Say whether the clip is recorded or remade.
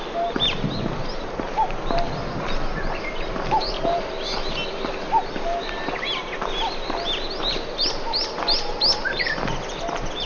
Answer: recorded